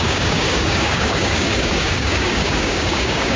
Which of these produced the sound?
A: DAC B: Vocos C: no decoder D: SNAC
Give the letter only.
A